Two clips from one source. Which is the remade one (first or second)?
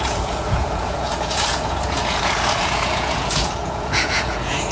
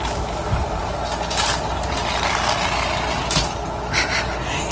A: first